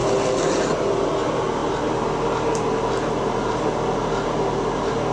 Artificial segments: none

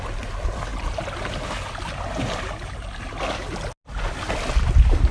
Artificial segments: none

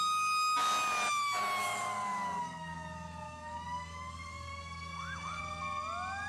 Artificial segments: 1.6-5.4 (codec, DAC)